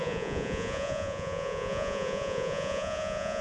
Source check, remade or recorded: remade